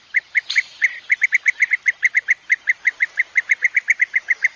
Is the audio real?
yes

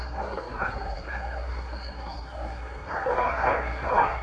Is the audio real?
no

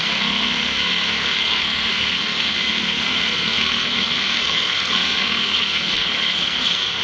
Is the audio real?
no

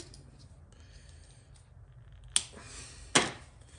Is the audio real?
yes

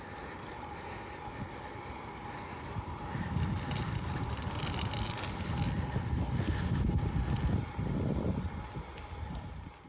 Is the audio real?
yes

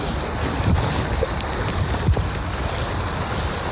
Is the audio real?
yes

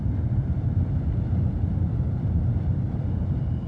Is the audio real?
no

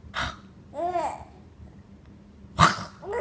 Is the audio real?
yes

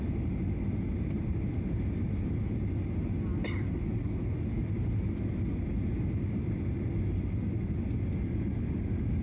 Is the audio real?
yes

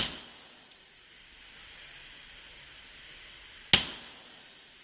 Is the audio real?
yes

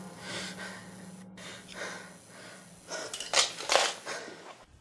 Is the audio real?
yes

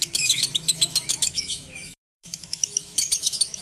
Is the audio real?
no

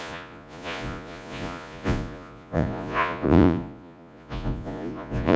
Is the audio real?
no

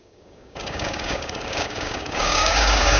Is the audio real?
no